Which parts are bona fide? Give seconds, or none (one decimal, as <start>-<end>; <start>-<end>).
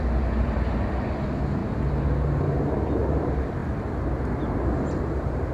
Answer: 1.6-2.5; 3.6-5.0